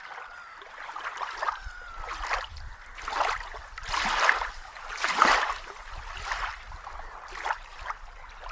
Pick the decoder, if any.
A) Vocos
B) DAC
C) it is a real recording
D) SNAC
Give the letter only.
C